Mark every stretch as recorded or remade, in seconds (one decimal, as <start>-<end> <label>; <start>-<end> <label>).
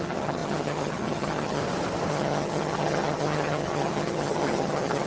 0.0-1.6 remade; 1.6-2.1 recorded; 2.1-5.1 remade